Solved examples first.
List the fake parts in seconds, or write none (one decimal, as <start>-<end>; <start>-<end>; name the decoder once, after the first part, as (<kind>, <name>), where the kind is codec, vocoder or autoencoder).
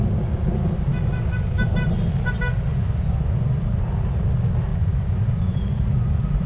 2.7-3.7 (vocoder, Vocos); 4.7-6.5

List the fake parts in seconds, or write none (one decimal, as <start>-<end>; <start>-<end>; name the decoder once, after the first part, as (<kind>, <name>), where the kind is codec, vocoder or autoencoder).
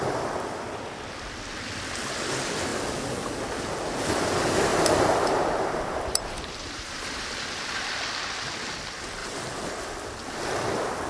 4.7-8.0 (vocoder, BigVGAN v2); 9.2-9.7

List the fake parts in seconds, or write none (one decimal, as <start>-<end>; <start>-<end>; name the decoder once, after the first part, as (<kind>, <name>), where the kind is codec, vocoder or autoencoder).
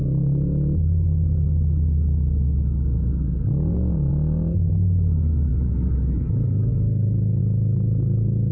4.1-8.5 (autoencoder, DAC-VAE)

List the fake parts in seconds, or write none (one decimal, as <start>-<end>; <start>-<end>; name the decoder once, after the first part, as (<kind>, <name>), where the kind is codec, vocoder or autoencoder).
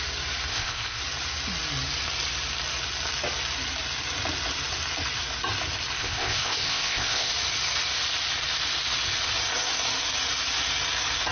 0.5-1.0 (codec, ZipCodec); 6.0-7.3